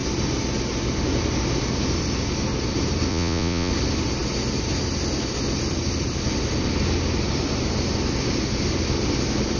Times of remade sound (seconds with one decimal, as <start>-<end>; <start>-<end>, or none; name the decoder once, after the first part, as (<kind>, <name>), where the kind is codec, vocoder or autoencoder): 3.1-3.7 (vocoder, Vocos)